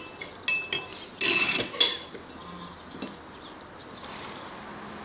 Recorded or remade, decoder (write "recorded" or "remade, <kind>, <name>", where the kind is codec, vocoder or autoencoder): recorded